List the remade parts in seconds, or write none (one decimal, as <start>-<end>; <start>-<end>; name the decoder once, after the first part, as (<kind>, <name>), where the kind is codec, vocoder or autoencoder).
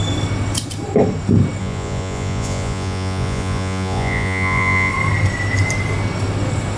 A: 1.6-4.9 (vocoder, Vocos)